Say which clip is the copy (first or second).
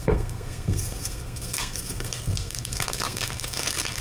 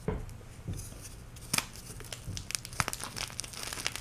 first